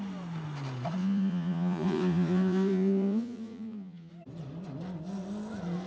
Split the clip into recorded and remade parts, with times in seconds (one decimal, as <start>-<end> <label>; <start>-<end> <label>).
0.0-1.0 recorded; 1.0-4.1 remade; 4.1-5.9 recorded